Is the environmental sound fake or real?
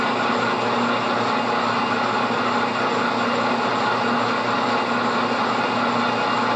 real